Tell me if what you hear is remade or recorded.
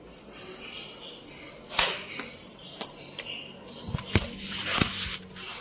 recorded